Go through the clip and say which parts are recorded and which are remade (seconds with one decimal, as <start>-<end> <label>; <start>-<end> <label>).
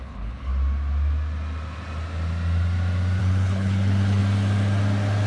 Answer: 0.0-0.5 remade; 0.5-3.2 recorded; 3.2-4.2 remade; 4.2-5.3 recorded